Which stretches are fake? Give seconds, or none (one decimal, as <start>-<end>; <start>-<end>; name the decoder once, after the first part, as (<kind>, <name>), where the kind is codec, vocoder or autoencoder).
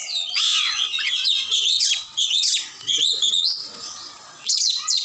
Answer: 0.0-5.0 (vocoder, WaveNeXt)